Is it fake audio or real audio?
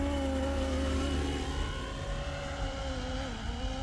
real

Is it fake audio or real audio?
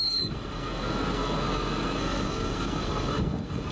fake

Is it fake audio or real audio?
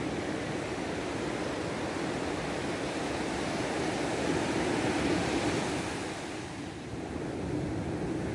real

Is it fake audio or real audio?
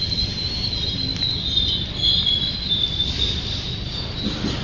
real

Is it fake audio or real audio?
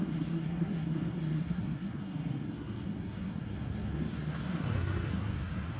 fake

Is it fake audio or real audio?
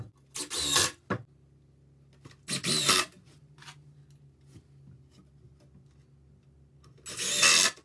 real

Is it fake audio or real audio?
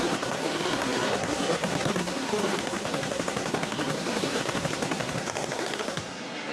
fake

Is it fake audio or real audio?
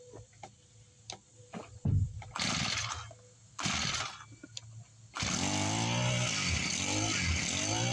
real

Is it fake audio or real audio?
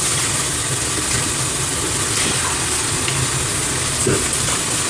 real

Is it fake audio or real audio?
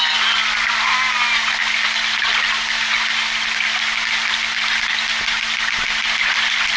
real